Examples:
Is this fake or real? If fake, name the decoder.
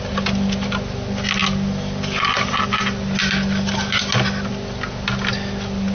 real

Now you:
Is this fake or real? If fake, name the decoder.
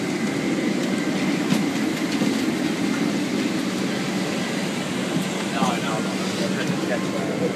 real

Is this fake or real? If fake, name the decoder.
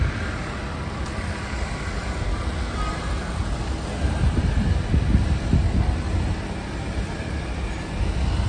real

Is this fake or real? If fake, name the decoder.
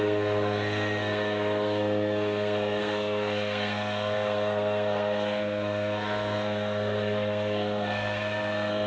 fake, codec, SNAC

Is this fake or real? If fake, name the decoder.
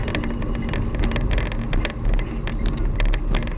real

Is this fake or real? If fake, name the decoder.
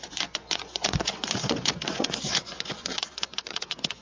fake, vocoder, Vocos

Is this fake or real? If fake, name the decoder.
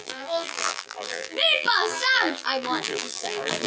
fake, vocoder, BigVGAN v2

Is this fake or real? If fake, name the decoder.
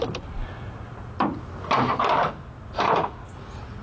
real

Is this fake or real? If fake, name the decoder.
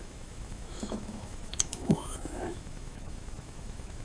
fake, autoencoder, DAC-VAE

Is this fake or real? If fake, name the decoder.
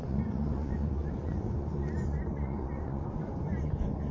fake, vocoder, Vocos